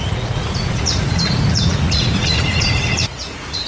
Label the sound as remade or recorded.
remade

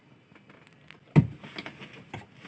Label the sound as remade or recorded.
recorded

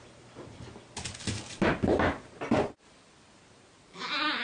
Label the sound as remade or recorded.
recorded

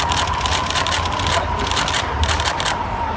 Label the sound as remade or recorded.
recorded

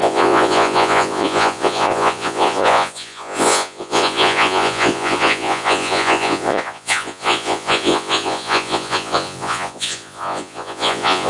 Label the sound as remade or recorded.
remade